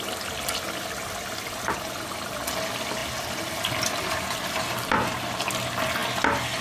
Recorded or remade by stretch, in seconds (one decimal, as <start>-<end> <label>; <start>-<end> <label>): 0.0-6.6 recorded